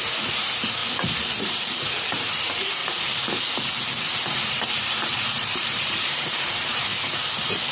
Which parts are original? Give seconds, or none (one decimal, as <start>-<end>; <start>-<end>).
0.8-1.4; 2.8-4.0; 6.9-7.7